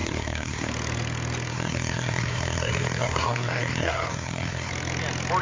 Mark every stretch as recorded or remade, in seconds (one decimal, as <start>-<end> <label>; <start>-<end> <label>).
0.0-0.7 remade; 0.7-1.5 recorded; 1.5-4.7 remade; 4.7-5.4 recorded